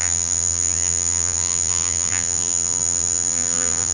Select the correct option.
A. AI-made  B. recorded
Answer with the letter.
A